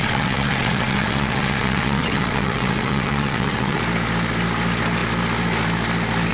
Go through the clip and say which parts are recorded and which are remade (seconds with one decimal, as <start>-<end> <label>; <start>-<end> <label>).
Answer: 0.0-3.8 remade; 3.8-6.3 recorded